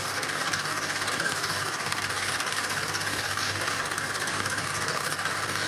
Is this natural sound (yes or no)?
no